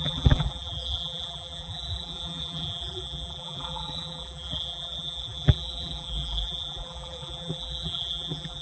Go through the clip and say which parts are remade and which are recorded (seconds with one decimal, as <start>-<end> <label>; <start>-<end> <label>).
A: 0.0-8.6 remade